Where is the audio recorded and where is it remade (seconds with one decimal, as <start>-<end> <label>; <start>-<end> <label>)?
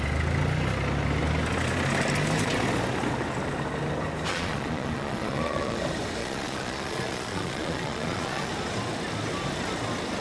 0.0-4.3 recorded; 4.3-5.8 remade; 5.8-6.2 recorded; 6.2-8.5 remade; 8.5-10.2 recorded